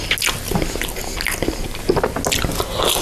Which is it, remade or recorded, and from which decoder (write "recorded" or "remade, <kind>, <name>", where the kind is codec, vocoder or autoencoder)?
recorded